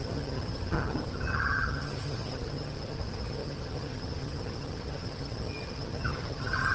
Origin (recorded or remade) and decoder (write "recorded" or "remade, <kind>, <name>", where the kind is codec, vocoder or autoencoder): remade, vocoder, HiFi-GAN